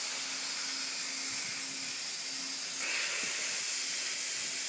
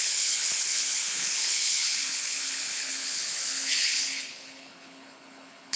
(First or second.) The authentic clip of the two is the first